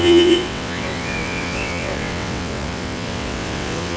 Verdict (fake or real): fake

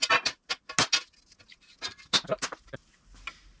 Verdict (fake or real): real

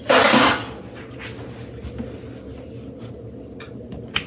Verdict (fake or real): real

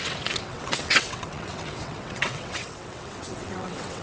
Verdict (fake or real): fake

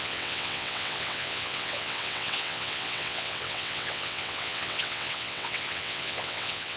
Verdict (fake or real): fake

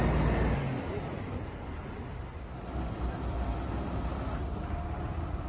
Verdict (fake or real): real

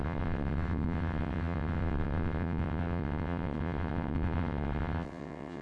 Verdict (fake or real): fake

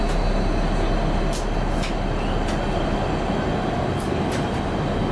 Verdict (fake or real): real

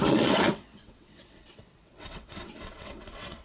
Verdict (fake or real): fake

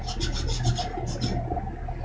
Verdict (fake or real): real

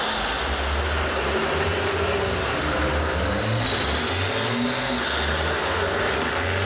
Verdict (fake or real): real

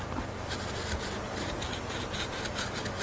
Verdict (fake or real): real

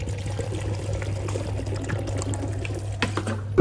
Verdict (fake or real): real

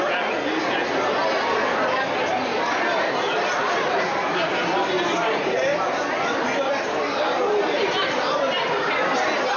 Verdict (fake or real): real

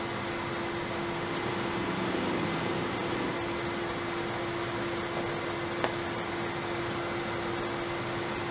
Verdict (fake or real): real